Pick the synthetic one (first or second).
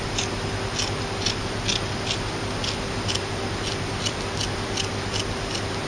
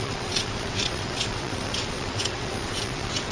second